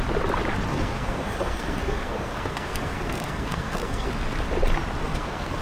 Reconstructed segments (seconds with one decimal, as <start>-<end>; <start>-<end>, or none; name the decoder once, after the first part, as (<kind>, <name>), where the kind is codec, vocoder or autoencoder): 0.7-4.1 (codec, SNAC); 5.0-5.6